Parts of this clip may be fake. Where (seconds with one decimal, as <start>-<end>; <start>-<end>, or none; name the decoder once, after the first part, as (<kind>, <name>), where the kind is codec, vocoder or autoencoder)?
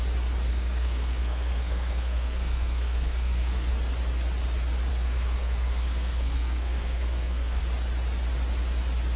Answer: 0.5-3.7 (codec, SNAC); 4.9-7.6